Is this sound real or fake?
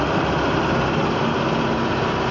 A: real